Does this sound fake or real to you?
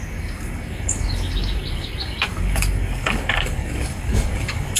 fake